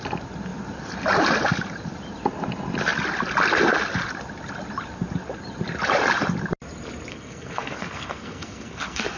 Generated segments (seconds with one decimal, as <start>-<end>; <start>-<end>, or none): 7.1-9.2